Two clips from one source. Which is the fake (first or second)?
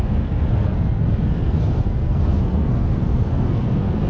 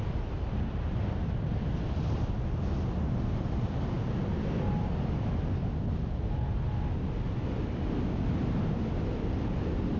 first